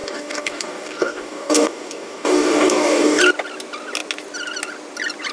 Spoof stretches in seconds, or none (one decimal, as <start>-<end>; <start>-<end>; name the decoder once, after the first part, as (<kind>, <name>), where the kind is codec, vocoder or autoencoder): 0.0-3.2 (codec, DAC)